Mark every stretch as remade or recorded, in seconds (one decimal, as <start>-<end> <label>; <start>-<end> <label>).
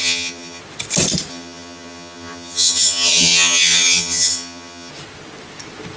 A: 0.0-0.6 remade; 0.6-1.3 recorded; 1.3-4.9 remade; 4.9-6.0 recorded